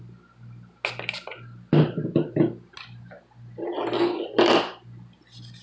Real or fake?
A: real